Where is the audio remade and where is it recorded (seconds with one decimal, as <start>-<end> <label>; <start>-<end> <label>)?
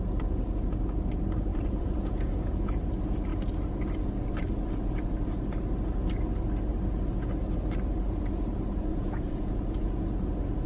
0.0-1.5 recorded; 1.5-2.7 remade; 2.7-8.9 recorded; 8.9-9.9 remade; 9.9-10.7 recorded